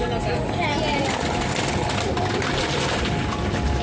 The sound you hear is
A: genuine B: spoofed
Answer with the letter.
A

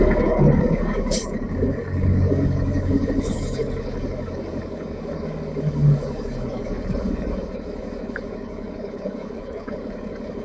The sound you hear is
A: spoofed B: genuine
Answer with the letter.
A